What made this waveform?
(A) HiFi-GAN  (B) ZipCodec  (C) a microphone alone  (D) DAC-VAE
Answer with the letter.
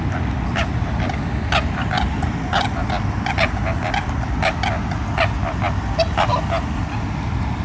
C